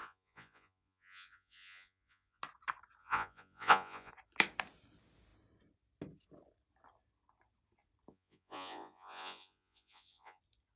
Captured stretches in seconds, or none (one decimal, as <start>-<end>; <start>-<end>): 2.4-3.0; 4.1-8.1; 10.4-10.8